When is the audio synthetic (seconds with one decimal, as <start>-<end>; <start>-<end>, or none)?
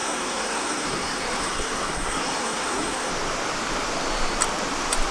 0.0-3.1